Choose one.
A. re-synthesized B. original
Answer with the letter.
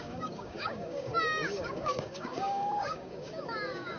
A